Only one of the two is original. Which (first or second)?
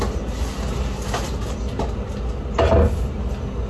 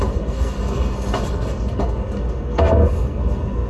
first